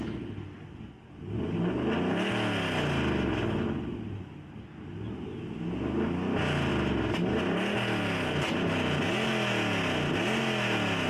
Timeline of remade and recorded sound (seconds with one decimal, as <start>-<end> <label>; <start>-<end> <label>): 0.0-11.1 recorded